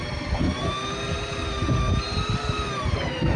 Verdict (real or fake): real